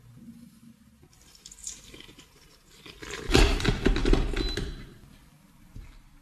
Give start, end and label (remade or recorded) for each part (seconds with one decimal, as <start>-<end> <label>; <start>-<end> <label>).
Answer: 0.0-1.6 recorded; 1.6-3.4 remade; 3.4-6.2 recorded

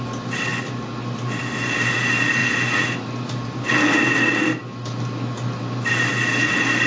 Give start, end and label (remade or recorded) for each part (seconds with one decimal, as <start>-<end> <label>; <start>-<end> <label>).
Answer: 0.0-6.9 recorded

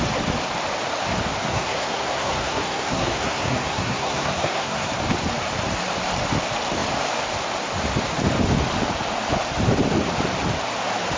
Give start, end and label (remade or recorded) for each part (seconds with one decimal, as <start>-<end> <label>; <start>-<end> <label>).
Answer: 0.0-1.5 recorded; 1.5-4.9 remade; 4.9-11.2 recorded

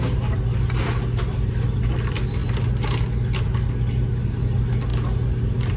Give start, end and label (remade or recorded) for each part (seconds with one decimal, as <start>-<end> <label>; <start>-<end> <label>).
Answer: 0.0-5.8 recorded